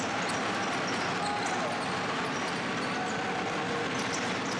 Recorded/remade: recorded